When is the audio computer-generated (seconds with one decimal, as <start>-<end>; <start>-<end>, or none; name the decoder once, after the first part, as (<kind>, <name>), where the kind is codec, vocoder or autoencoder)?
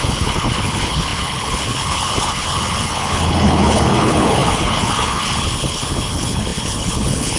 0.0-7.4 (codec, HILCodec)